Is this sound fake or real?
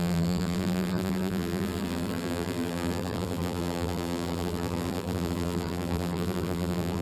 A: fake